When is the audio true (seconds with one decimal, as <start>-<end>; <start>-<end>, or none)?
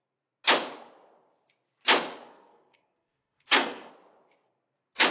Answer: 0.0-2.3; 3.9-5.1